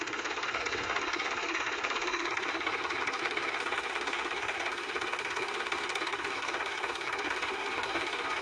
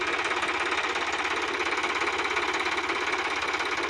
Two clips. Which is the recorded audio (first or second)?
second